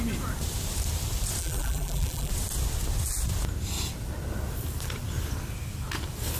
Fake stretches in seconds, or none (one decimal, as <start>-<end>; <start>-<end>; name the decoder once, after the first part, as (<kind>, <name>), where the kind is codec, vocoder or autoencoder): 1.4-2.3 (vocoder, BigVGAN v2)